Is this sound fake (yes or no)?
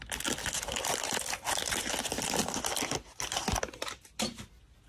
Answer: no